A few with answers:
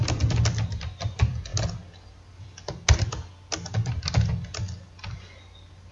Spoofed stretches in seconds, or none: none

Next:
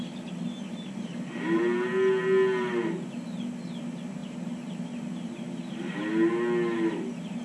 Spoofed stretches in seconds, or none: none

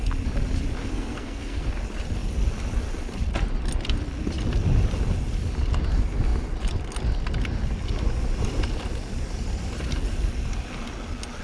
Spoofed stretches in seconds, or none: 0.8-1.7 (codec, SNAC)

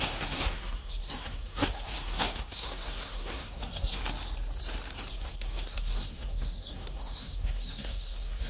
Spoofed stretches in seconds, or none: 0.0-4.0 (codec, SNAC); 5.1-8.5

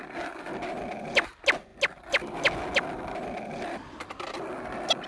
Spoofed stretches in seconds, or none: none